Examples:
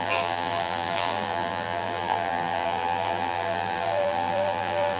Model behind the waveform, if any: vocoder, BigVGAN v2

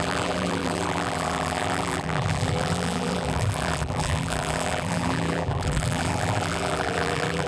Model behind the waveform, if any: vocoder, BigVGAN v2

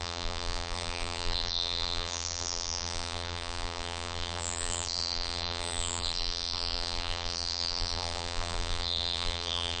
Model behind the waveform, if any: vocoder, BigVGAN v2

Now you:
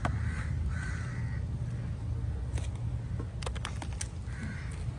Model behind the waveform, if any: none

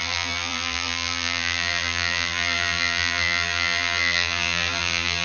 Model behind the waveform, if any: vocoder, BigVGAN v2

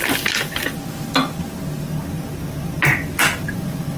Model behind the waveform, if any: none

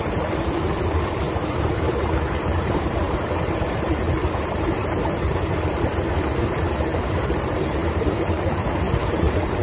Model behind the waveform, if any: vocoder, BigVGAN v2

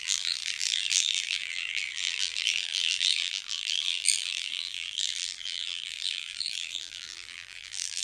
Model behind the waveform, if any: vocoder, BigVGAN v2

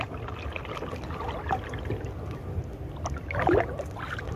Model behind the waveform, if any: none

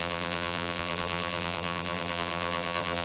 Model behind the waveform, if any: vocoder, BigVGAN v2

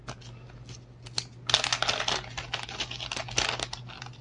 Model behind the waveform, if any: none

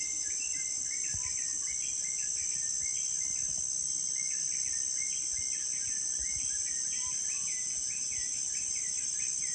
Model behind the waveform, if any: vocoder, BigVGAN v2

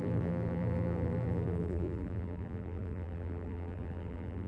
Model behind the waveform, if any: vocoder, BigVGAN v2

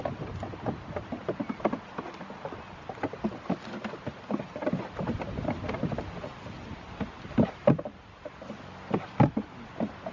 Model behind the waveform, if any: none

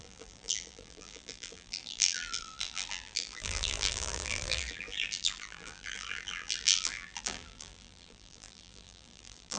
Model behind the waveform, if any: vocoder, BigVGAN v2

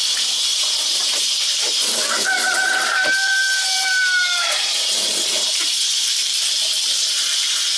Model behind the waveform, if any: vocoder, BigVGAN v2